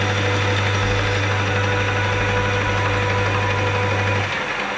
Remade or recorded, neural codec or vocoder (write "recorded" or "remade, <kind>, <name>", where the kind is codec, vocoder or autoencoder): recorded